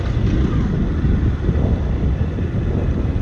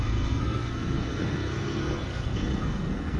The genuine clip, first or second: first